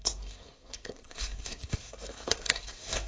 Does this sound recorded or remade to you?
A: remade